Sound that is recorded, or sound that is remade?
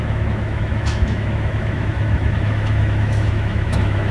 remade